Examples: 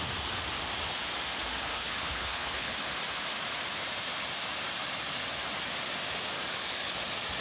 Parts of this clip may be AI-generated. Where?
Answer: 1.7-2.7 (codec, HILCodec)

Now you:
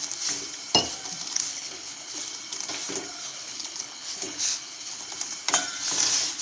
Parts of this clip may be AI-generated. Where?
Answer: 1.5-2.2 (codec, HILCodec); 3.3-5.0